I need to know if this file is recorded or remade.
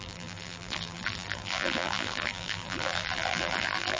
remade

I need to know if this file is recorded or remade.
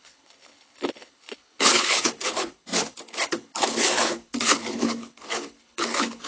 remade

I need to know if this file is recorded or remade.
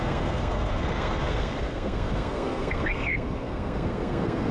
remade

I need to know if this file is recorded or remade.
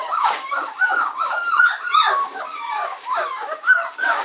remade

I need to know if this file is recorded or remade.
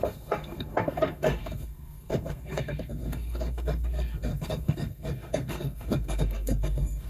remade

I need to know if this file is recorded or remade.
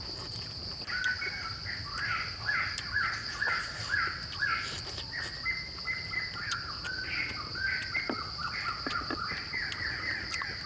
recorded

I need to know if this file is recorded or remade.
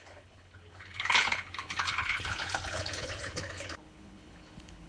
remade